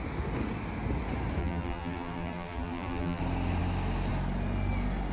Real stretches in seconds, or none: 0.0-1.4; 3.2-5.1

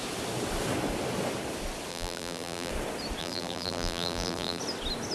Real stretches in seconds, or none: 0.0-1.9; 2.7-3.2; 4.6-5.1

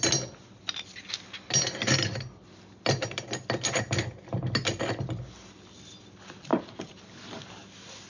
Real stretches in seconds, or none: 0.0-8.1